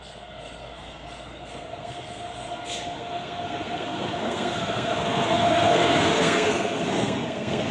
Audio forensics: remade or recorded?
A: remade